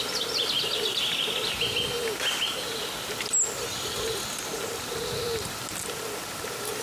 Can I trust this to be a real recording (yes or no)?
yes